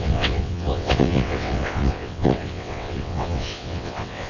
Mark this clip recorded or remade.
remade